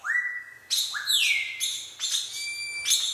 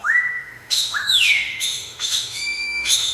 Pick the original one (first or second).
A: first